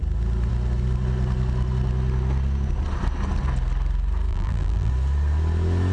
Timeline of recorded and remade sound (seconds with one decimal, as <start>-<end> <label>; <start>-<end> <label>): 0.0-4.3 recorded; 4.3-4.9 remade; 4.9-5.9 recorded